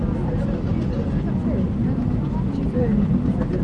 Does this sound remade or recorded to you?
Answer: recorded